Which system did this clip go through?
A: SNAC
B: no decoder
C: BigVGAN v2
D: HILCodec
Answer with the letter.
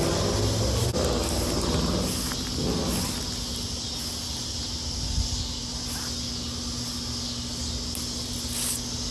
B